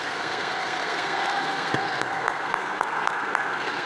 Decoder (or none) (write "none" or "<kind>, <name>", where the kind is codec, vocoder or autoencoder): codec, SNAC